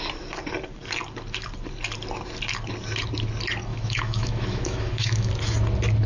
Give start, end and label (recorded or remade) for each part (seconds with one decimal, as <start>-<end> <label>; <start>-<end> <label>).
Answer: 0.0-3.7 recorded; 3.7-5.3 remade; 5.3-6.1 recorded